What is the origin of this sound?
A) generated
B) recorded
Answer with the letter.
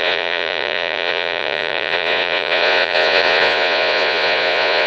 A